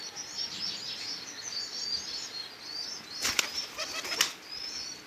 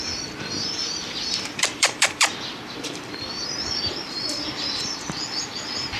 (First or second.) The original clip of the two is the first